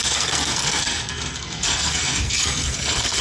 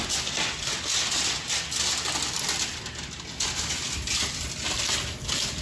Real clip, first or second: second